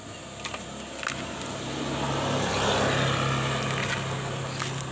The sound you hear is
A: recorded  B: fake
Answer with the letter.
A